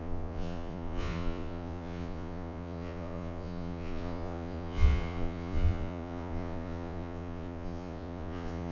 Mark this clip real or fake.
fake